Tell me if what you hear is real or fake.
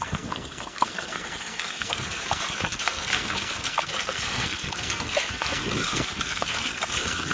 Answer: fake